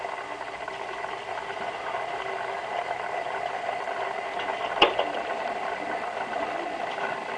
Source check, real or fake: fake